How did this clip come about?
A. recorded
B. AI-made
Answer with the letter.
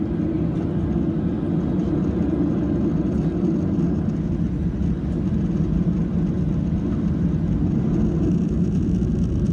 A